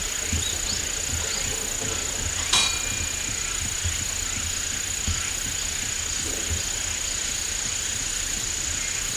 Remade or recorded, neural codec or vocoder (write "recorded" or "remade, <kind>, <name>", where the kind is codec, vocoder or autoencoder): recorded